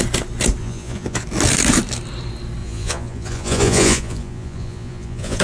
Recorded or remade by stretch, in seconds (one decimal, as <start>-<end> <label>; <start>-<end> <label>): 0.0-0.6 recorded; 0.6-1.2 remade; 1.2-2.6 recorded; 2.6-5.4 remade